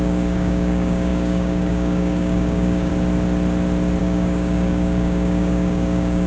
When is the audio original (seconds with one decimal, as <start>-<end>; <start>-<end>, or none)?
2.9-4.0